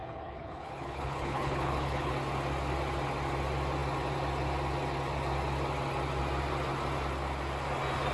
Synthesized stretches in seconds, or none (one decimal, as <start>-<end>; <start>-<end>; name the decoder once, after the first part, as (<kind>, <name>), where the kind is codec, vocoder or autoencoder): 0.0-2.1 (codec, HILCodec)